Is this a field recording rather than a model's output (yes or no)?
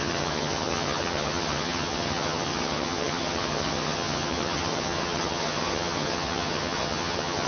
no